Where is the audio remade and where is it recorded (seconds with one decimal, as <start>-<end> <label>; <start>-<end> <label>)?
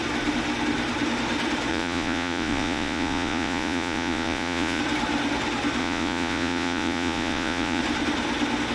0.0-1.7 recorded; 1.7-4.8 remade; 4.8-5.8 recorded; 5.8-7.8 remade; 7.8-8.7 recorded